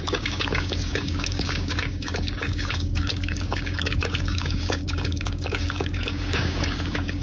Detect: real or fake fake